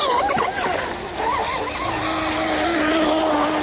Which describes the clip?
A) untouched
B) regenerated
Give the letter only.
A